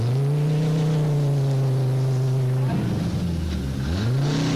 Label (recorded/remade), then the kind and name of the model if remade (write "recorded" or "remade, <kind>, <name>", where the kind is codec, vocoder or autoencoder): recorded